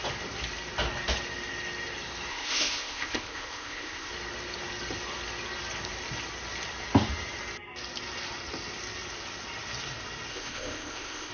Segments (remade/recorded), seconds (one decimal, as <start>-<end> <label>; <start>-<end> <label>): 0.0-2.3 recorded; 2.3-4.1 remade; 4.1-10.3 recorded; 10.3-11.3 remade